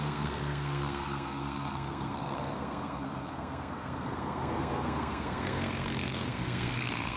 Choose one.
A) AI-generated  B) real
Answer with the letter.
A